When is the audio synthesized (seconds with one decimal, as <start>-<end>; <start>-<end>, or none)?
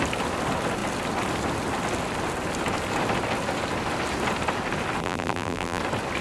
5.0-5.8